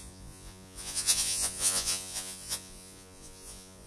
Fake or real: fake